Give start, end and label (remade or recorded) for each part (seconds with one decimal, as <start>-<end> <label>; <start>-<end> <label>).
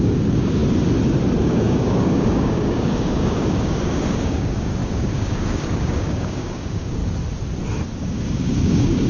0.0-0.6 remade; 0.6-1.4 recorded; 1.4-7.0 remade; 7.0-8.0 recorded; 8.0-9.1 remade